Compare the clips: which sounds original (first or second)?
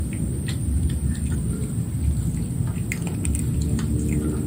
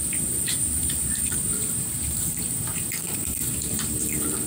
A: first